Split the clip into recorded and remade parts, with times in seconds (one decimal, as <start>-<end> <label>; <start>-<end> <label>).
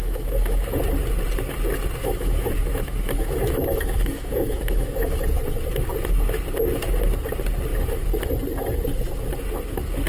0.0-0.8 remade; 0.8-2.0 recorded; 2.0-5.2 remade; 5.2-10.1 recorded